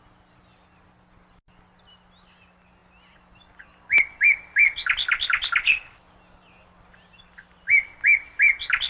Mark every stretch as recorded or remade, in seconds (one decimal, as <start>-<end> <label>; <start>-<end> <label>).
0.0-8.9 recorded